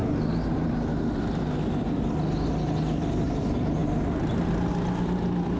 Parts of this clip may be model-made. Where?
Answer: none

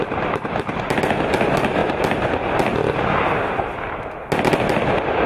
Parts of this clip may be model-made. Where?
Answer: none

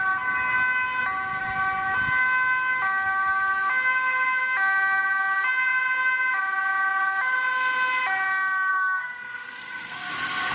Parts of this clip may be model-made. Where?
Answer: 8.7-10.1 (codec, SNAC)